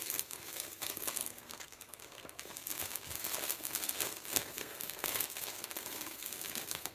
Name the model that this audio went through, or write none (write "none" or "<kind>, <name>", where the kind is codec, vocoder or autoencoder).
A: codec, SNAC